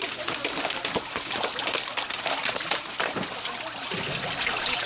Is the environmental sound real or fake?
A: real